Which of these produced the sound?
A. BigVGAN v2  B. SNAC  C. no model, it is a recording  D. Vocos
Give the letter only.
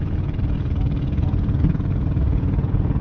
D